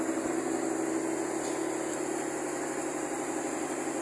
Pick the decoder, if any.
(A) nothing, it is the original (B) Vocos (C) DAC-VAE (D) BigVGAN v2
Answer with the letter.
A